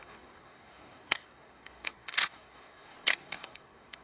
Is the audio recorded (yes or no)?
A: no